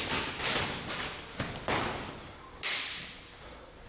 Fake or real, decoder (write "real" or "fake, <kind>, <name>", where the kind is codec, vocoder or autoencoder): real